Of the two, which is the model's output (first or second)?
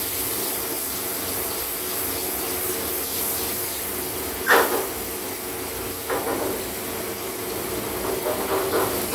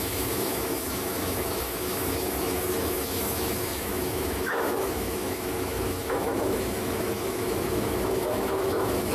second